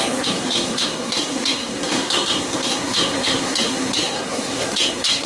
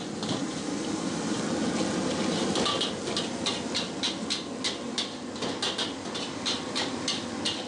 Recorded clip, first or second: second